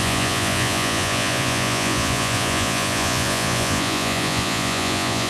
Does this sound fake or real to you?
fake